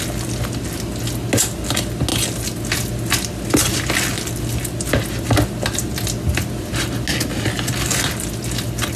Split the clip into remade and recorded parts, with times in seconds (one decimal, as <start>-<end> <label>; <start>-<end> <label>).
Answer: 0.0-9.0 recorded